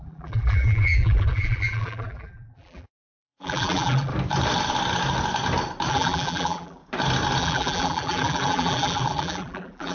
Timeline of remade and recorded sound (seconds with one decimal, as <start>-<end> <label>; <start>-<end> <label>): 0.0-4.1 remade; 4.1-5.9 recorded; 5.9-6.8 remade; 6.8-7.4 recorded; 7.4-9.9 remade